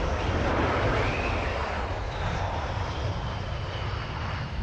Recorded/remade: remade